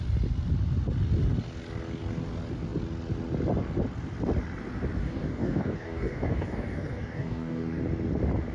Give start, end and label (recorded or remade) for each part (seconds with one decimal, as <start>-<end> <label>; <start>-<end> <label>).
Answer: 0.0-5.0 recorded; 5.0-7.8 remade; 7.8-8.5 recorded